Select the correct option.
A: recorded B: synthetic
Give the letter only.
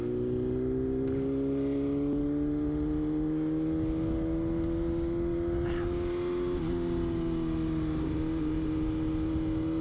A